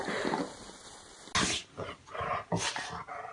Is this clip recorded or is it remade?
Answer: recorded